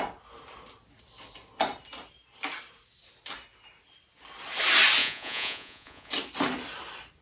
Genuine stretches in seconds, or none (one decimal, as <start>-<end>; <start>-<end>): 0.0-5.0; 6.1-7.2

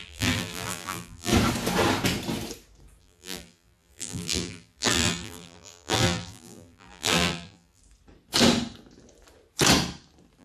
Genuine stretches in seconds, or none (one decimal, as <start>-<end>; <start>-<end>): 1.3-3.0; 7.8-10.4

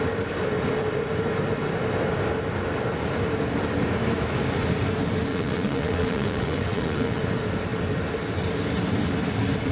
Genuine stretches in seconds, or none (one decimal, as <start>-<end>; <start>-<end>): 0.0-5.3; 7.2-9.7

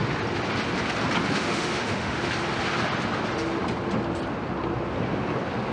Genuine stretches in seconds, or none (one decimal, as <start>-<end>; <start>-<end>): 0.0-1.3; 2.2-5.7

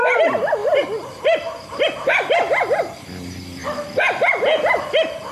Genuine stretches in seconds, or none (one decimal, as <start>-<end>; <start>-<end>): 0.0-0.6; 3.0-5.3